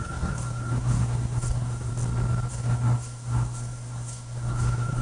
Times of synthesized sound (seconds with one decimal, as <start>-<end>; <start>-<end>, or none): 0.0-1.9; 2.5-5.0